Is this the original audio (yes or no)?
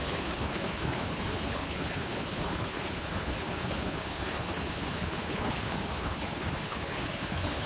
no